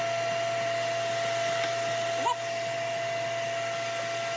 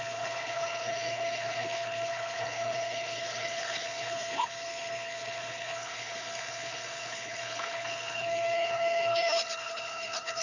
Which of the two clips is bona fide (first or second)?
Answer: first